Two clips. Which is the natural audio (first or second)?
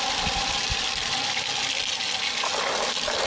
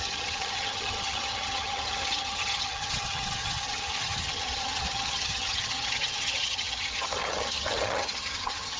first